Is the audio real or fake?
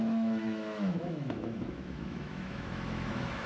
fake